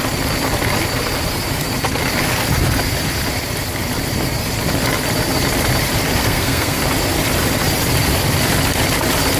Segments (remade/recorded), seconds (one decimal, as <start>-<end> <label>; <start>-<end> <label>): 0.0-6.2 recorded; 6.2-6.8 remade; 6.8-9.4 recorded